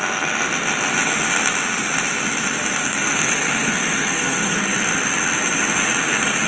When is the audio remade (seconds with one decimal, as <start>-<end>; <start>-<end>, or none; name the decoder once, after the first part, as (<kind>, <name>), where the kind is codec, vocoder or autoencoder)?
2.8-4.6 (codec, SNAC)